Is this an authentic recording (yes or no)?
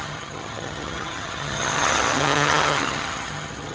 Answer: no